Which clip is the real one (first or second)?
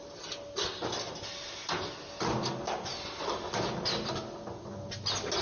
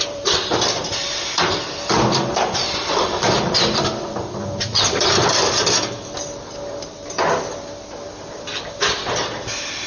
first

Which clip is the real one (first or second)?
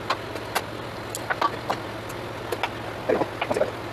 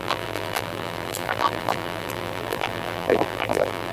first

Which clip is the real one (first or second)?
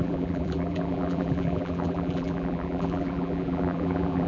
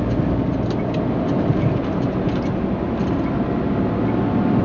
second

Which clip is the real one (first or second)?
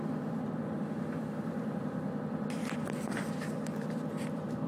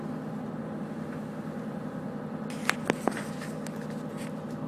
second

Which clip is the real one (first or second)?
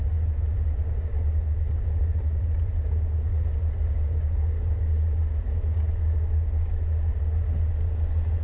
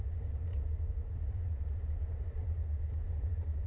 first